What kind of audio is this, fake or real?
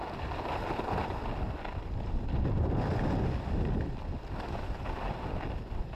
real